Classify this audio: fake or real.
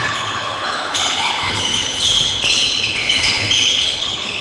fake